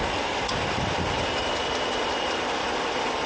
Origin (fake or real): fake